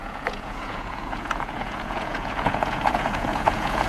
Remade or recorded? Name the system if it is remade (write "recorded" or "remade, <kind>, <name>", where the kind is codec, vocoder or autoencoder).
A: remade, vocoder, Vocos